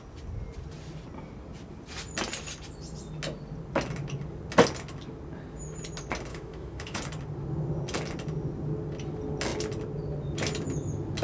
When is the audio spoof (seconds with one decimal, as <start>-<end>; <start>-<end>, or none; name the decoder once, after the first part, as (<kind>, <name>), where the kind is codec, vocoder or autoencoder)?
6.3-7.0 (autoencoder, DAC-VAE)